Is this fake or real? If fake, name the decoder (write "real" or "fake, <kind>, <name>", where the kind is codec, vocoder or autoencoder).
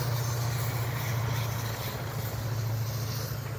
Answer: real